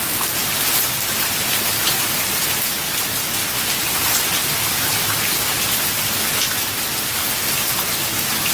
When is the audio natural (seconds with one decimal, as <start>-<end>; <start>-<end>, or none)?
0.0-8.5